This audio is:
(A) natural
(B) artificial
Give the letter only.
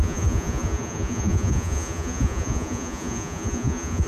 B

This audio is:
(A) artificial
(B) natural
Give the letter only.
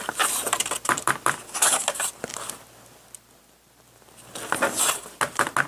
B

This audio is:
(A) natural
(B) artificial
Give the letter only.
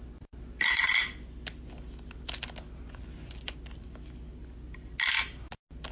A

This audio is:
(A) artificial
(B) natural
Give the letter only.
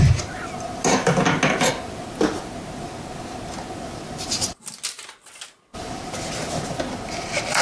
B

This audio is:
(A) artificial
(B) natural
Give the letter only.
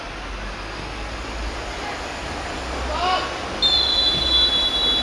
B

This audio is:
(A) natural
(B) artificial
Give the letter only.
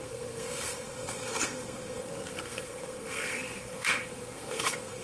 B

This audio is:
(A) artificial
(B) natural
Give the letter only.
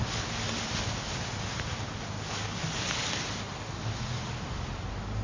B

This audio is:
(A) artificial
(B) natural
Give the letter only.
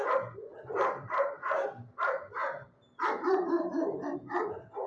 A